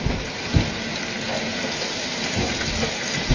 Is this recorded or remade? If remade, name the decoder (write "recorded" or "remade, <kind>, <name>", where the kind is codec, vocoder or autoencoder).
recorded